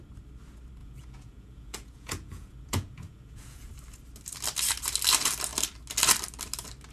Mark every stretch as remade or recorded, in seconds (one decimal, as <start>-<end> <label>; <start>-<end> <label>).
0.0-0.8 recorded; 0.8-3.7 remade; 3.7-6.9 recorded